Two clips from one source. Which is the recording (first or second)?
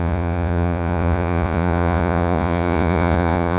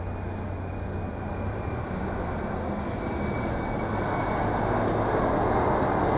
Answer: second